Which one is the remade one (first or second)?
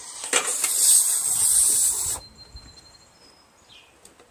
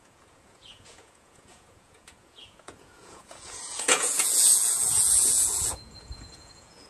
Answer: second